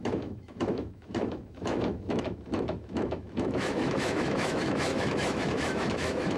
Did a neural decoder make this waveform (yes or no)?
yes